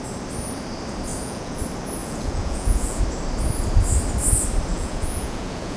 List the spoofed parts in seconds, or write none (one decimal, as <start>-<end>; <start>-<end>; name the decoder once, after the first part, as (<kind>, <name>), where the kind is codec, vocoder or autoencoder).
1.1-1.6 (vocoder, Vocos); 2.0-3.0; 4.7-5.8